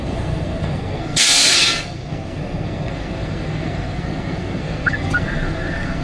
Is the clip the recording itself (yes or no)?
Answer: no